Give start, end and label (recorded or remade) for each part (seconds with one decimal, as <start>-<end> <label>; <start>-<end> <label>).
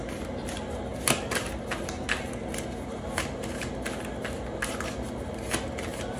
0.0-6.2 recorded